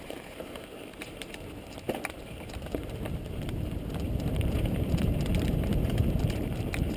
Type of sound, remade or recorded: remade